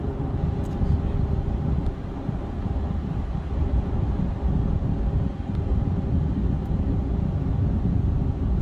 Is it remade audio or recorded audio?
recorded